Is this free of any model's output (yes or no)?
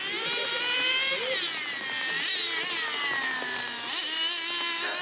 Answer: yes